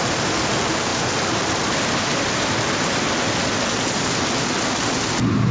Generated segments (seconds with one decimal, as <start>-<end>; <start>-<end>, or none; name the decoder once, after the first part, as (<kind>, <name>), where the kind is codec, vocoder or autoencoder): none